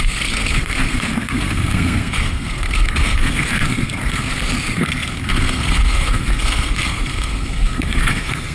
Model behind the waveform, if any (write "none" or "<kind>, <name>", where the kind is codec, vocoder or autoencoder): codec, SNAC